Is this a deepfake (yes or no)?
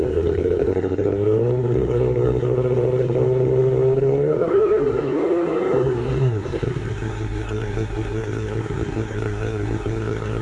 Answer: yes